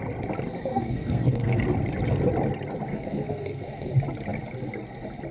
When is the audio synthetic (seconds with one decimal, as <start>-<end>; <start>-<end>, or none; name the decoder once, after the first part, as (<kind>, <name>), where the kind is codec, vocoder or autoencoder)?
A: 0.7-1.6 (codec, SNAC); 2.9-3.9

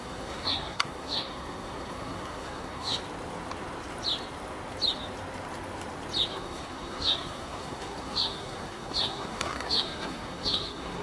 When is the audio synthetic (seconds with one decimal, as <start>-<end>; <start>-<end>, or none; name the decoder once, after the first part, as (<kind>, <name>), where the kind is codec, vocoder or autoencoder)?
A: 0.0-3.0 (codec, SNAC); 6.3-11.0

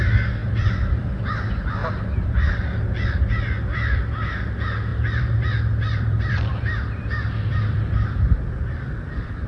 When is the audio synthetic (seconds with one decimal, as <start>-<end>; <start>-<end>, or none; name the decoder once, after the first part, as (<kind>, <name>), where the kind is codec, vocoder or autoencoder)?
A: 0.4-1.3 (vocoder, BigVGAN v2); 4.9-9.5

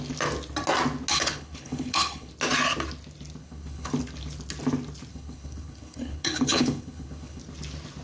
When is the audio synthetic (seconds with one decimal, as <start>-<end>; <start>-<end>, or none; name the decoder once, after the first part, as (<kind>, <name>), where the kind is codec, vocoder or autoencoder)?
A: 1.1-2.3 (codec, HILCodec); 3.4-3.9; 5.1-7.4

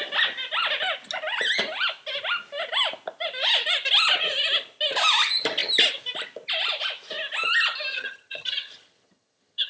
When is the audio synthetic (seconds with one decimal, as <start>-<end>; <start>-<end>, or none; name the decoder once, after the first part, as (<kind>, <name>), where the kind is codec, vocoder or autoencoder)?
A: 7.9-9.7 (vocoder, HiFi-GAN)

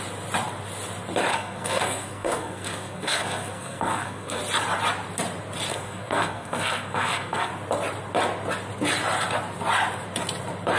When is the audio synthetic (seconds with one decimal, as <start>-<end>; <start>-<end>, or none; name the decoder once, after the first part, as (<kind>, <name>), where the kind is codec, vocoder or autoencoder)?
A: 1.3-4.4 (codec, SNAC); 5.7-7.5